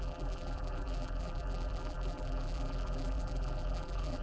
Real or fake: fake